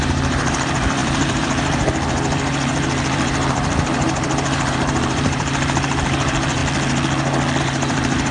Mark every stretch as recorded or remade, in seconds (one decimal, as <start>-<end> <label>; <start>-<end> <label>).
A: 0.0-6.6 remade; 6.6-7.6 recorded; 7.6-8.3 remade